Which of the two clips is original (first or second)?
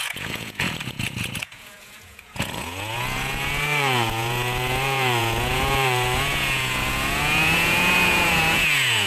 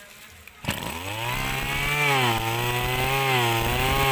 second